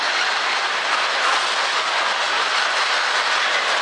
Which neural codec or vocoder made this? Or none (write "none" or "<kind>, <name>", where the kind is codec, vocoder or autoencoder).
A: none